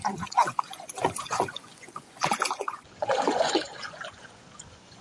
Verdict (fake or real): fake